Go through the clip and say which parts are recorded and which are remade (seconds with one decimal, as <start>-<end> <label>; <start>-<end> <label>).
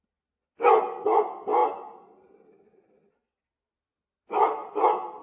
0.0-5.2 recorded